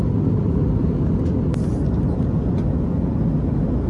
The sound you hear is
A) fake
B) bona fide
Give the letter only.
B